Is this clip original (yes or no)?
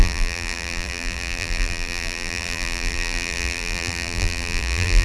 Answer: no